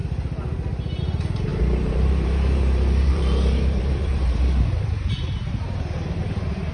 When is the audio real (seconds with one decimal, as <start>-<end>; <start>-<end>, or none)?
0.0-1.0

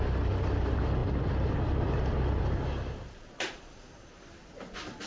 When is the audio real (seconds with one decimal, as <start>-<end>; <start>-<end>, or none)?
0.0-5.1

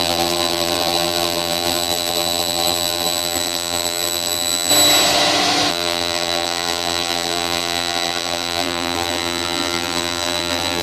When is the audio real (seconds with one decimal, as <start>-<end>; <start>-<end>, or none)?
4.7-5.7